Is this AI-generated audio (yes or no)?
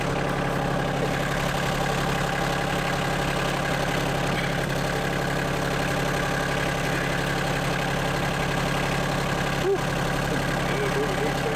no